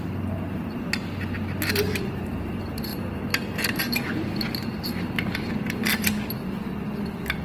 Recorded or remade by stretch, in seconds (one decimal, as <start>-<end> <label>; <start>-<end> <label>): 0.0-7.4 recorded